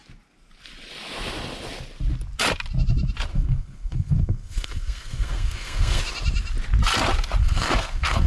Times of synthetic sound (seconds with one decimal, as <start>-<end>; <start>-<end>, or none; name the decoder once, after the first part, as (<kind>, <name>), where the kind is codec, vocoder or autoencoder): 3.3-6.0 (codec, SNAC); 7.4-8.3